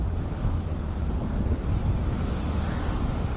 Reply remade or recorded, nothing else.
recorded